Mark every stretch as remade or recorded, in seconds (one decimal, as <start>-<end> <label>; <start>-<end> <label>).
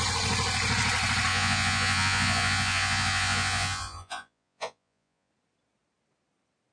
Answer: 0.0-1.3 recorded; 1.3-5.3 remade; 5.3-6.7 recorded